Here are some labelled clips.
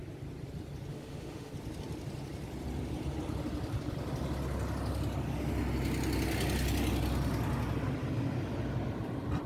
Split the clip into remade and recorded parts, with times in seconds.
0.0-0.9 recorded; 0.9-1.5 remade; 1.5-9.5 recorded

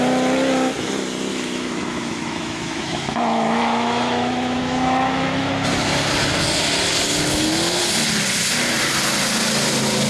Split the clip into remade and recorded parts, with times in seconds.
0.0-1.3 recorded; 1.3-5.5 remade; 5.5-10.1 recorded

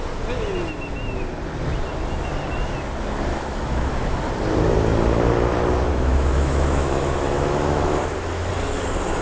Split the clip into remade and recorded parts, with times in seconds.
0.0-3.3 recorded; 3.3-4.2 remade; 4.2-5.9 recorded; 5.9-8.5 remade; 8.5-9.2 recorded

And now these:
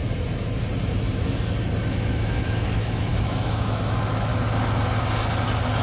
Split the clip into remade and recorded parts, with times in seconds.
0.0-1.9 recorded; 1.9-4.3 remade; 4.3-5.8 recorded

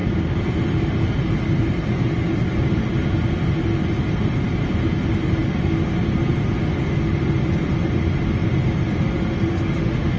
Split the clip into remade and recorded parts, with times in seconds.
0.0-9.5 recorded; 9.5-10.2 remade